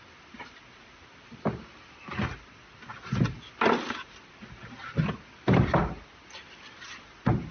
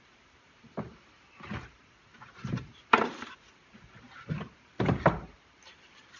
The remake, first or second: second